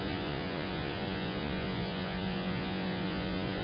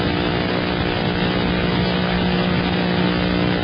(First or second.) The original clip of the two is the second